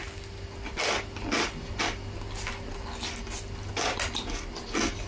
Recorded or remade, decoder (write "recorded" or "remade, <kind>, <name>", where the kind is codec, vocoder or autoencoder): recorded